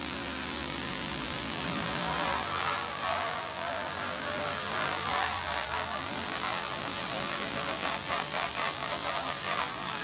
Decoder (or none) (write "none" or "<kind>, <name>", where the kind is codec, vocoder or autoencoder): vocoder, BigVGAN v2